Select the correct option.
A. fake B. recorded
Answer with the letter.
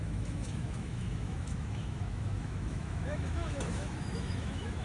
A